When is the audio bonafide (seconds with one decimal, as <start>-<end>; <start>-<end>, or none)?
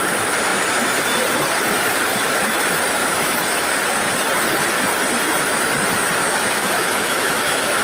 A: 0.0-3.0; 3.7-6.2